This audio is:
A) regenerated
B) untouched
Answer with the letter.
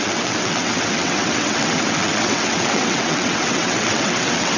A